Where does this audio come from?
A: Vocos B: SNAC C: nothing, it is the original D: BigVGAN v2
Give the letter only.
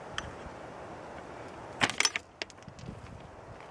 C